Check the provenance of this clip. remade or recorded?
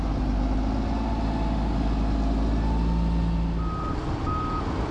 recorded